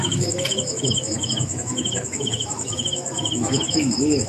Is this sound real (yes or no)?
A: no